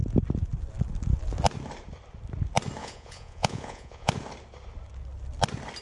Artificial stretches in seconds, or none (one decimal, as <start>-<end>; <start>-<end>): 2.8-4.1